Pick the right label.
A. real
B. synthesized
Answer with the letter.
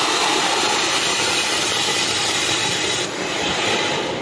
B